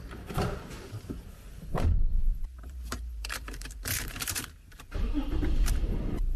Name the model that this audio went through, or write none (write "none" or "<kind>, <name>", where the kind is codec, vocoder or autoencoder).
vocoder, BigVGAN v2